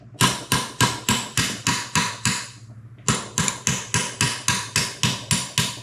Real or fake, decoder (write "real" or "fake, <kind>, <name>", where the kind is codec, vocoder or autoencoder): real